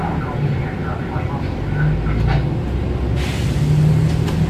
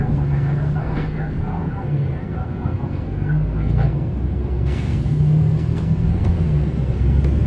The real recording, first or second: first